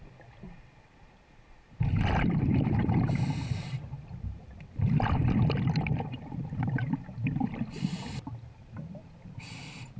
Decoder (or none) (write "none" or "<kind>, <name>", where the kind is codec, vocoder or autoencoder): vocoder, BigVGAN v2